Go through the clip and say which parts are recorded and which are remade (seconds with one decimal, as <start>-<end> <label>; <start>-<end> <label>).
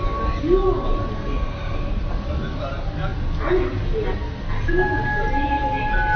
0.0-1.1 recorded; 1.1-1.8 remade; 1.8-6.2 recorded